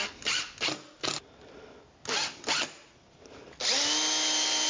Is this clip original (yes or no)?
yes